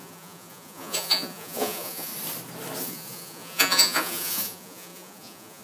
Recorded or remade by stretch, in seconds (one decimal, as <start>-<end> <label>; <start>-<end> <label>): 0.0-2.1 remade; 2.1-2.8 recorded; 2.8-5.6 remade